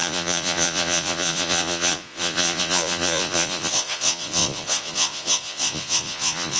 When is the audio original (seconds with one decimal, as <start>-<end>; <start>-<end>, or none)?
none